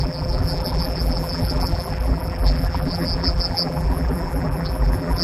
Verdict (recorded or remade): remade